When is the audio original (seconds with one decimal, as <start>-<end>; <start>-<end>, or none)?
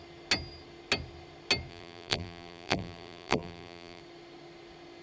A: 0.0-1.7; 4.0-5.0